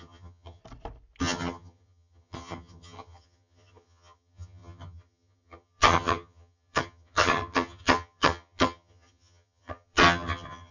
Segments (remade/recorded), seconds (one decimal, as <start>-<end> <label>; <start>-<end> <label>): 0.0-0.6 remade; 0.6-1.2 recorded; 1.2-10.7 remade